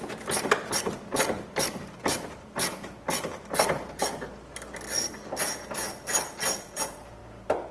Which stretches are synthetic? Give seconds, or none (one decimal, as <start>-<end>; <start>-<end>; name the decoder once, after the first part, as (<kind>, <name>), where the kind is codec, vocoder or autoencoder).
0.0-4.1 (vocoder, BigVGAN v2); 6.6-7.2